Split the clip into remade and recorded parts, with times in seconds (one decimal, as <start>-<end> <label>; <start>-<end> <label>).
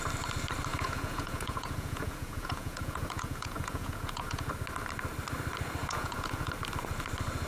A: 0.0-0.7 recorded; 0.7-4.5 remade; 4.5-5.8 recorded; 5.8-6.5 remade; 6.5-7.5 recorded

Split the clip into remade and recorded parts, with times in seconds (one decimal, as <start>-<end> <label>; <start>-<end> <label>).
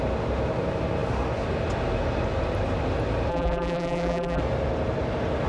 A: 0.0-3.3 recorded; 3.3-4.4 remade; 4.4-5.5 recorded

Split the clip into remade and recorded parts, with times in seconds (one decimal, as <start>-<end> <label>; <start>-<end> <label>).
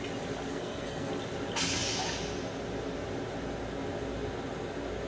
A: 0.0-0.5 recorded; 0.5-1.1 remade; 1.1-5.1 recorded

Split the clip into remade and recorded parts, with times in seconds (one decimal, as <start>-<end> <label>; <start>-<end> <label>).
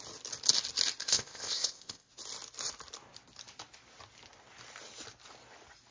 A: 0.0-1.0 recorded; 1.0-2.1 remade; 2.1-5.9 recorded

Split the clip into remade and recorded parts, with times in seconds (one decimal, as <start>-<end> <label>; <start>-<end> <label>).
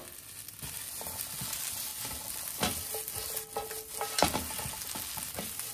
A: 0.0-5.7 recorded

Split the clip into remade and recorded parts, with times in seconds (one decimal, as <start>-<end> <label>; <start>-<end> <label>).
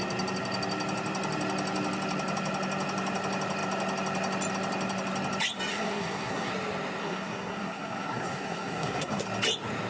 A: 0.0-5.7 recorded; 5.7-6.5 remade; 6.5-7.0 recorded; 7.0-9.2 remade; 9.2-9.9 recorded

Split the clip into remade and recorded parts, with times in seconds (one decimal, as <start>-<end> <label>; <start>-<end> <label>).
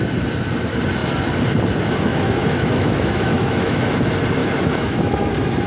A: 0.0-2.1 recorded; 2.1-3.8 remade; 3.8-4.4 recorded; 4.4-5.3 remade; 5.3-5.7 recorded